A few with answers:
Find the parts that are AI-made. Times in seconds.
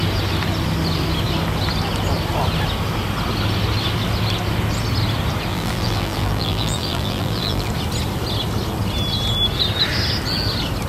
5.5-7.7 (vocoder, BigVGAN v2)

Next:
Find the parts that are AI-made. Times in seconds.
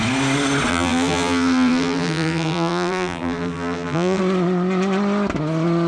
0.7-4.2 (vocoder, BigVGAN v2)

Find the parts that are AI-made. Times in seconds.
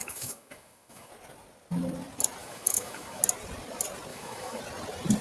0.0-1.1 (autoencoder, DAC-VAE); 2.4-3.2; 4.1-4.6